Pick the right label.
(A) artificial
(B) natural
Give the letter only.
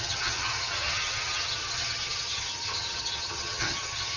A